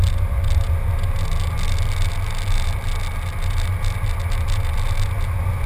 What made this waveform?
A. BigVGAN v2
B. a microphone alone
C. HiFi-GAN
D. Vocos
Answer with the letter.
B